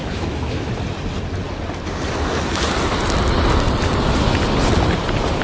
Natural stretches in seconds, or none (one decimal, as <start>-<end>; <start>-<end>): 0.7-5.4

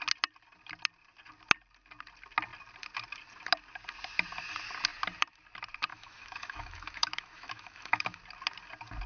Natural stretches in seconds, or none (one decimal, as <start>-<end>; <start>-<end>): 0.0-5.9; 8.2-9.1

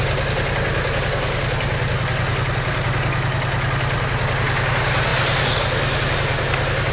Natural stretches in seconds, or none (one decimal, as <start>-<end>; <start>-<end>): 0.0-6.9

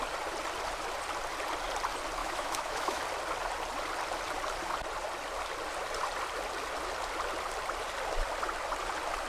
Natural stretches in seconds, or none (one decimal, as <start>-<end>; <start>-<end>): 0.0-2.2; 3.0-9.3

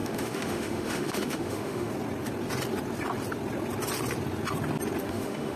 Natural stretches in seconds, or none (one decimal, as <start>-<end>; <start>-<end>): 1.9-5.0

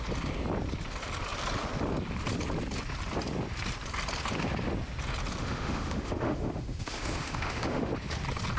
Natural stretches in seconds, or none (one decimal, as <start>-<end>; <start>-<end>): 0.0-5.4; 7.9-8.6